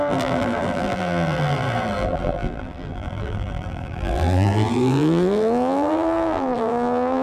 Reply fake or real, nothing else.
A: fake